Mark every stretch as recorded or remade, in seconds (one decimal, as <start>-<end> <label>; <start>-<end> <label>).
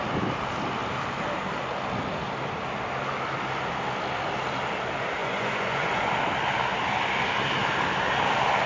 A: 0.0-5.2 recorded; 5.2-6.1 remade; 6.1-8.7 recorded